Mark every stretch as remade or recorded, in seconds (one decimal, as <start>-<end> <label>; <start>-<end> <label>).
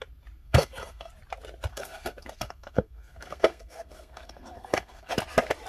0.0-0.4 recorded; 0.4-1.1 remade; 1.1-1.7 recorded; 1.7-5.1 remade; 5.1-5.7 recorded